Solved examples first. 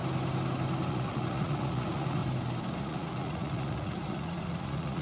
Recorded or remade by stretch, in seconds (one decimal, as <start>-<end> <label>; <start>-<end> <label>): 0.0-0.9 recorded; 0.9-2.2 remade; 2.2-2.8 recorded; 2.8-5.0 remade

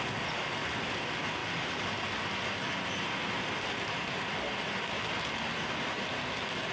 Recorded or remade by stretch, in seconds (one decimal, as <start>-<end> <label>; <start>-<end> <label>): 0.0-6.7 recorded

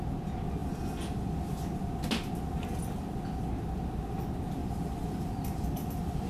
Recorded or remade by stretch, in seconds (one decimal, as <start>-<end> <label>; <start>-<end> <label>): 0.0-4.6 recorded; 4.6-5.2 remade; 5.2-6.3 recorded

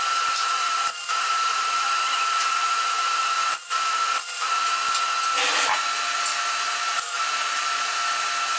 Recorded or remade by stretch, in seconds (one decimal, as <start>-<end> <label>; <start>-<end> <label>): 0.0-0.6 recorded; 0.6-4.6 remade; 4.6-6.3 recorded; 6.3-7.3 remade; 7.3-8.6 recorded

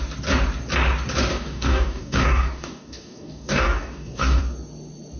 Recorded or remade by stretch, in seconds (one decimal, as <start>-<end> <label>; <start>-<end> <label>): 0.0-1.3 recorded; 1.3-4.4 remade; 4.4-5.2 recorded

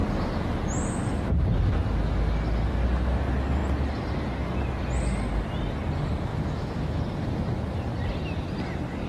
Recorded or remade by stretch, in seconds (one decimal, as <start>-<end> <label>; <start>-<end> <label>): 0.0-6.3 recorded; 6.3-7.0 remade; 7.0-9.1 recorded